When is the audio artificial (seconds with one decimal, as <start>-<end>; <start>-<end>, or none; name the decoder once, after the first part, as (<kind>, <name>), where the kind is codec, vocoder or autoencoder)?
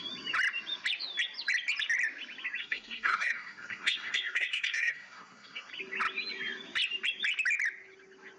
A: 2.6-5.7 (codec, SNAC)